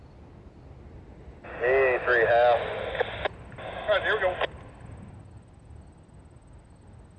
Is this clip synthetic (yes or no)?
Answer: no